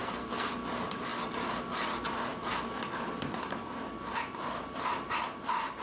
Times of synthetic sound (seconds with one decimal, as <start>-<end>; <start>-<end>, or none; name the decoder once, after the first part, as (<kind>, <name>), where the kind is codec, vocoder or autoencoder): 0.0-0.5 (codec, SNAC)